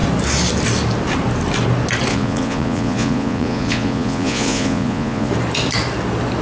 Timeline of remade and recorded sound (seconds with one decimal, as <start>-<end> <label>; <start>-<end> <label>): 0.0-2.1 recorded; 2.1-5.3 remade; 5.3-6.4 recorded